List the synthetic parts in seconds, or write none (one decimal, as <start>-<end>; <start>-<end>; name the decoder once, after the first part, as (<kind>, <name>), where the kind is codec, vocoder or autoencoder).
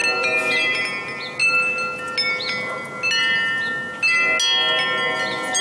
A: none